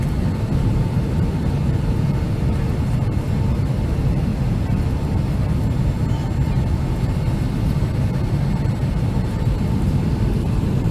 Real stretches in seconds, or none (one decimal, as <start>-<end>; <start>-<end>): 4.3-7.7